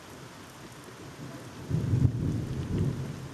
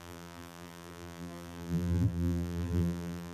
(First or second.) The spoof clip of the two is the second